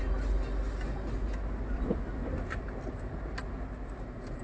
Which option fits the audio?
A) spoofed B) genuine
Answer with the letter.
B